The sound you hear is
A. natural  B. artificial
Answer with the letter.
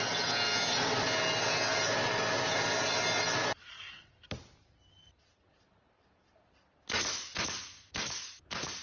A